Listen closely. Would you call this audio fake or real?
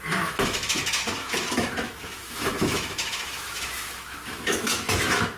fake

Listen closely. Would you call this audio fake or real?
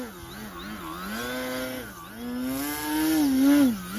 real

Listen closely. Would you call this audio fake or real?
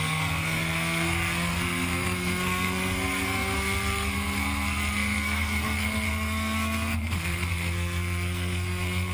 fake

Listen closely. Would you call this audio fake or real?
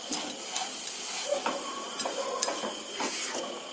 real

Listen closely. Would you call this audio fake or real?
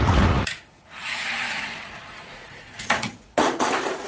fake